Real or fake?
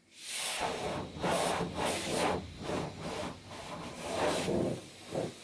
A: real